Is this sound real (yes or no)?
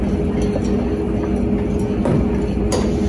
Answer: yes